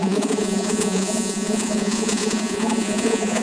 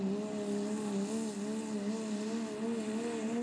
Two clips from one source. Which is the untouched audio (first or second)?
second